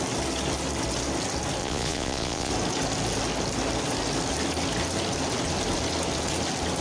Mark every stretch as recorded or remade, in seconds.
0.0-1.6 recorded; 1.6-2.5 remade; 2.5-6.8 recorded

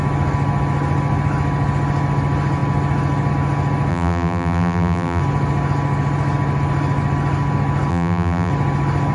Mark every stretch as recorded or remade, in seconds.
0.0-3.9 recorded; 3.9-5.2 remade; 5.2-7.9 recorded; 7.9-8.5 remade; 8.5-9.1 recorded

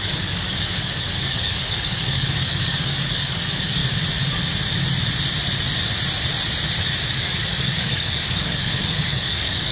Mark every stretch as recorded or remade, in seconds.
0.0-3.8 remade; 3.8-7.1 recorded; 7.1-9.7 remade

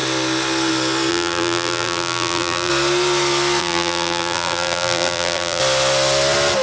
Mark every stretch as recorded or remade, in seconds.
0.0-1.1 recorded; 1.1-2.7 remade; 2.7-3.6 recorded; 3.6-5.6 remade; 5.6-6.6 recorded

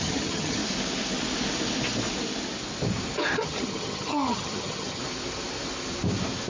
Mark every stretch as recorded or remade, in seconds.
0.0-0.6 remade; 0.6-3.4 recorded; 3.4-5.0 remade; 5.0-6.5 recorded